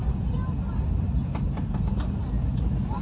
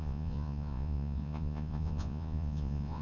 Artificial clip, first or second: second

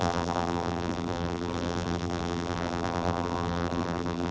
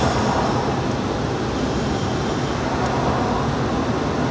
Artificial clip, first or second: first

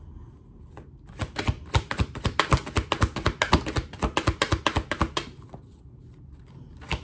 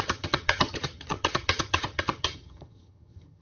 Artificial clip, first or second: second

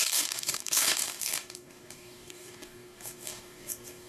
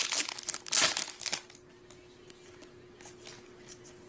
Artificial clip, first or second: first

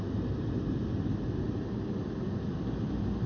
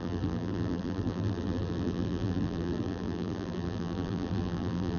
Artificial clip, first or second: second